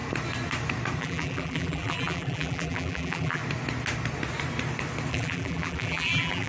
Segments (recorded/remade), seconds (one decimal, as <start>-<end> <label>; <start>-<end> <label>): 0.0-1.0 recorded; 1.0-3.4 remade; 3.4-5.1 recorded; 5.1-6.5 remade